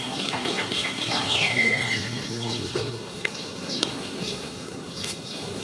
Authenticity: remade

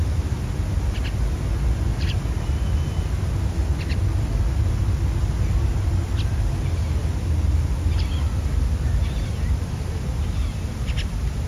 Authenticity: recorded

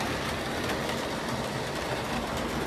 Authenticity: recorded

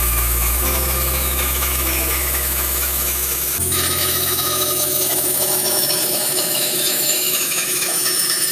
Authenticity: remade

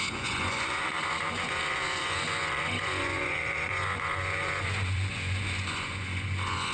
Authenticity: remade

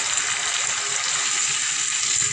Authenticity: recorded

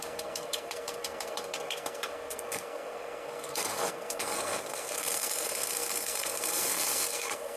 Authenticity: remade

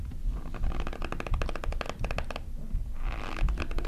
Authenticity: recorded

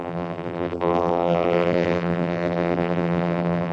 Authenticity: remade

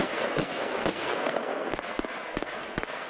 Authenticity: remade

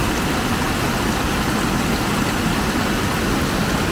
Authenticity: recorded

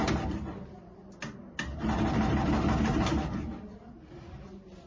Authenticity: recorded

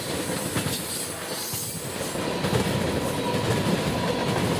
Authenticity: recorded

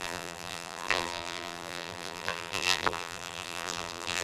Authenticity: remade